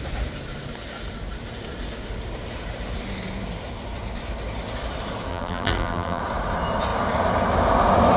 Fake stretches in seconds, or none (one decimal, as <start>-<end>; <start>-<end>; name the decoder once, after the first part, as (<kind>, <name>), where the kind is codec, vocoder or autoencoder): 5.3-6.2 (vocoder, BigVGAN v2)